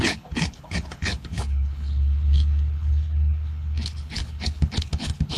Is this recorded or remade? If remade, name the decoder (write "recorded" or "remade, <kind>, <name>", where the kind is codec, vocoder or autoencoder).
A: remade, codec, HILCodec